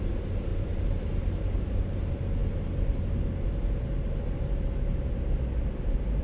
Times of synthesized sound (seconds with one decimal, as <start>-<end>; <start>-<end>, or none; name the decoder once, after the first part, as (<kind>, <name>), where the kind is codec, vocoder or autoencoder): 0.0-0.5 (vocoder, BigVGAN v2); 1.3-2.4